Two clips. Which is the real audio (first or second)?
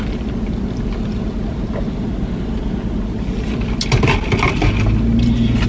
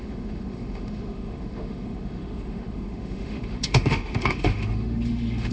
first